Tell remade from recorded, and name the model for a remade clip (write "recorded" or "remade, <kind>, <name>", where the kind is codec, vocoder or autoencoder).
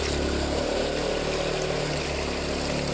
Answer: recorded